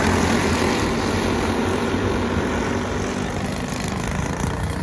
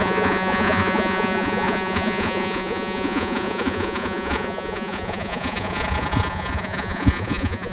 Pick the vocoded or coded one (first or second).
second